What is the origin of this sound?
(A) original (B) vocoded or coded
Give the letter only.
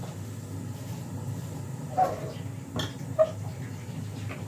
A